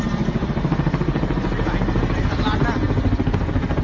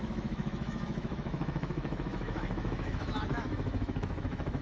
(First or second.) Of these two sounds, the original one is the first